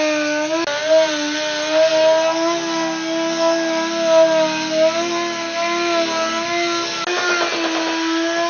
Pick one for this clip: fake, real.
real